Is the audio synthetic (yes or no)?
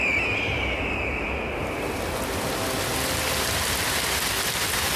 no